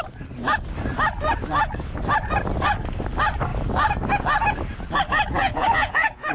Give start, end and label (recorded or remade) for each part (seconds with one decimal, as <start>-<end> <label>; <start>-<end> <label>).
0.0-5.4 recorded; 5.4-6.3 remade